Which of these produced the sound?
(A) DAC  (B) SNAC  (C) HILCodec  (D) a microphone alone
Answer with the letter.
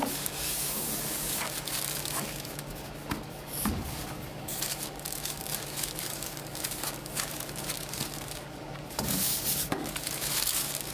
A